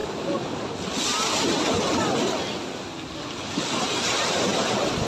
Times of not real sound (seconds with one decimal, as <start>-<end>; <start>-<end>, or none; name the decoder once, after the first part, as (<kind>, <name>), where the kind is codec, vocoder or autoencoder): none